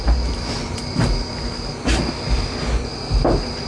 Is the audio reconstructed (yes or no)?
no